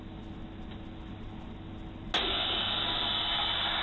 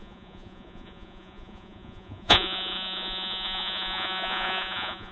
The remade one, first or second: second